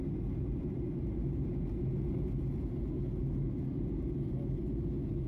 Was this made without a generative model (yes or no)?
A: yes